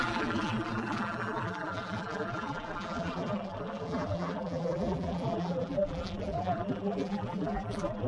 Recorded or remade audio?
remade